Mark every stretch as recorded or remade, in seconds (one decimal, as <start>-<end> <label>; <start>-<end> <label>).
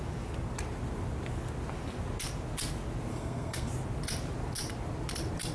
0.0-3.1 recorded; 3.1-3.7 remade; 3.7-5.5 recorded